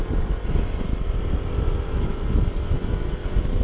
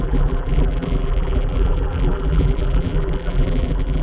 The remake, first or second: second